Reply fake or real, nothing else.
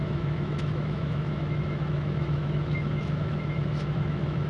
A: fake